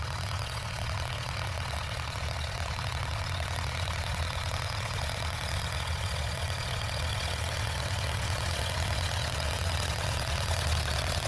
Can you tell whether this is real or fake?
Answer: fake